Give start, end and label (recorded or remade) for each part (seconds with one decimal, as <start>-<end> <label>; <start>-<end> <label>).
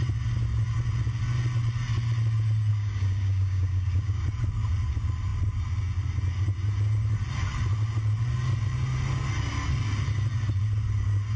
0.0-2.7 recorded; 2.7-4.2 remade; 4.2-11.4 recorded